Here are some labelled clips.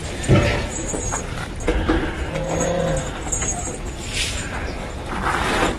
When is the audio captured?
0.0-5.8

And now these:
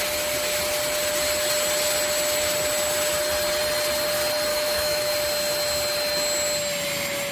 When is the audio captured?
0.0-4.5; 5.1-7.3

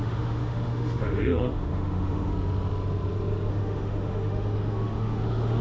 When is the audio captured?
2.3-3.5

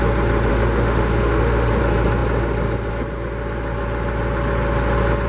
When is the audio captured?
0.0-0.5; 1.8-5.3